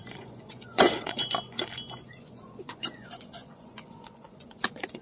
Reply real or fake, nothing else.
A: fake